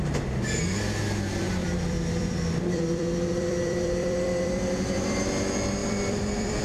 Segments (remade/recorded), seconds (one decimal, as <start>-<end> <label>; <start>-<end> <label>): 0.0-1.6 recorded; 1.6-5.3 remade; 5.3-5.8 recorded; 5.8-6.6 remade